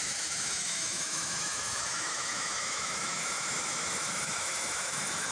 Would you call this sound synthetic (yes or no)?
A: yes